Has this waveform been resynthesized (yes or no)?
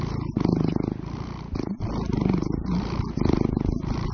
no